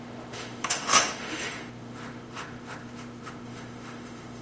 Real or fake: fake